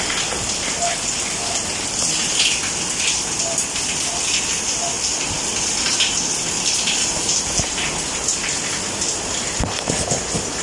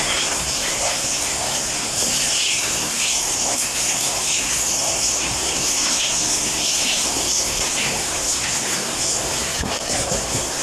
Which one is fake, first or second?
second